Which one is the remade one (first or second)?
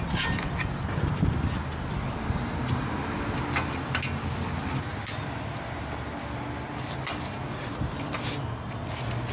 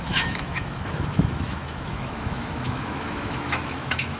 second